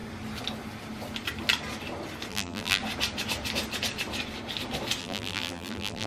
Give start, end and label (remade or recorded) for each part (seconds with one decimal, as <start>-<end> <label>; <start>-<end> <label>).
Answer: 0.0-2.3 recorded; 2.3-2.8 remade; 2.8-5.0 recorded; 5.0-6.1 remade